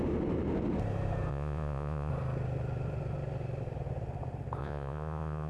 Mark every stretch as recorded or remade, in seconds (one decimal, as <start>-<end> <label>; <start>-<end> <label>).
0.0-1.3 recorded; 1.3-2.1 remade; 2.1-4.6 recorded; 4.6-5.5 remade